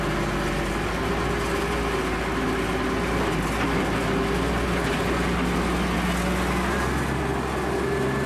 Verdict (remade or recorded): recorded